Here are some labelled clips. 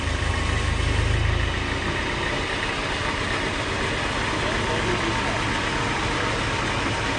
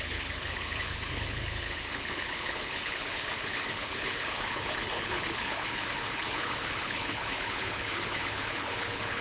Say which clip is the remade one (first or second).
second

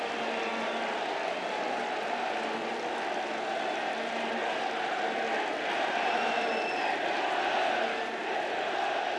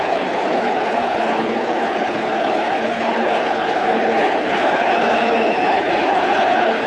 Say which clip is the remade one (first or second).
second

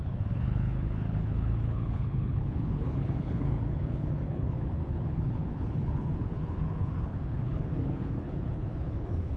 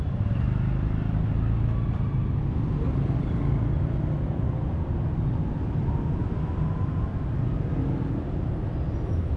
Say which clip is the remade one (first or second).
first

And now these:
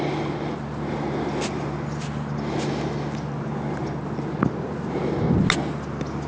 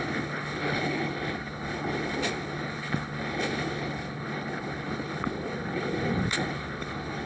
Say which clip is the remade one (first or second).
second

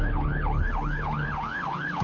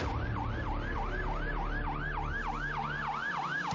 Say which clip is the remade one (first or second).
first